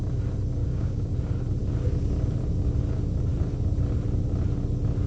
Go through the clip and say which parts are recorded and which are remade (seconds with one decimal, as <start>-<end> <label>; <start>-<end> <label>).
0.0-0.6 recorded; 0.6-1.1 remade; 1.1-5.1 recorded

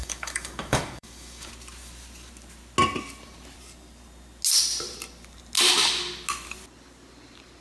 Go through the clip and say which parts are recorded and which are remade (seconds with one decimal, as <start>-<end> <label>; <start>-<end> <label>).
0.0-1.5 remade; 1.5-7.6 recorded

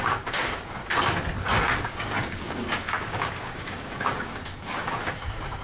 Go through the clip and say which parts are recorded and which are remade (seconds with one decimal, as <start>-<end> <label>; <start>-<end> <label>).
0.0-0.8 remade; 0.8-1.4 recorded; 1.4-5.6 remade

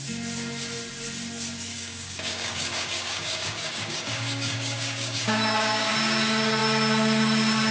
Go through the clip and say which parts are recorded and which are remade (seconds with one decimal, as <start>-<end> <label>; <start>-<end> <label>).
0.0-1.7 recorded; 1.7-5.9 remade; 5.9-7.7 recorded

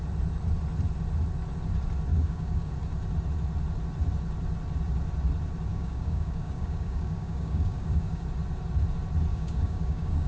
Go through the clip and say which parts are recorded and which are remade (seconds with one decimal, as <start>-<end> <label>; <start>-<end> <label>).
0.0-2.1 recorded; 2.1-2.7 remade; 2.7-5.7 recorded; 5.7-8.2 remade; 8.2-9.3 recorded; 9.3-10.3 remade

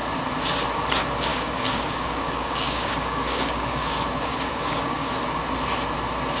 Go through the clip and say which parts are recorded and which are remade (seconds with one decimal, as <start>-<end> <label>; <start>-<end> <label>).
0.0-1.3 recorded; 1.3-5.1 remade; 5.1-6.4 recorded

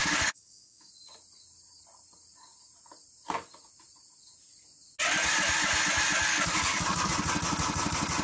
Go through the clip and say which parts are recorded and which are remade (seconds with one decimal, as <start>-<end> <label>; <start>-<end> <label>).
0.0-0.9 remade; 0.9-6.3 recorded; 6.3-7.1 remade; 7.1-8.2 recorded